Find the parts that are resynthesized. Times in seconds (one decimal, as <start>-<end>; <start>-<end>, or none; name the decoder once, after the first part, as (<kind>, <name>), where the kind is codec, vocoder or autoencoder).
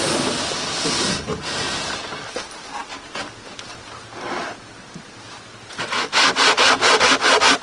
none